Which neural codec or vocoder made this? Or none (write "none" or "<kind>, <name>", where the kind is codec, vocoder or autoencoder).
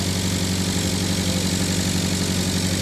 none